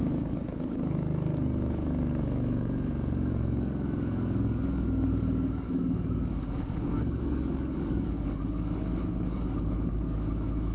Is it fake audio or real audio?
fake